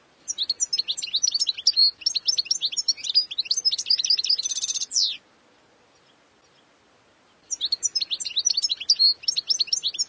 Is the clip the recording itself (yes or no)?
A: yes